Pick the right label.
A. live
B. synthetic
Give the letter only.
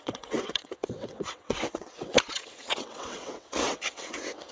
B